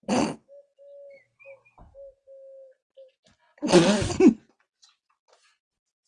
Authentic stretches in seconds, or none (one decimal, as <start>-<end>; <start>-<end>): 0.0-6.1